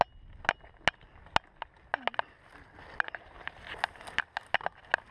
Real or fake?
real